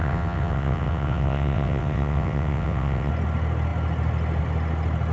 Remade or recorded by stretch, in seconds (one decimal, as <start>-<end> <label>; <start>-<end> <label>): 0.0-3.1 remade; 3.1-5.1 recorded